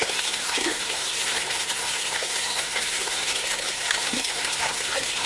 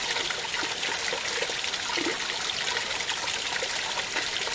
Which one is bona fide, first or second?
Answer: second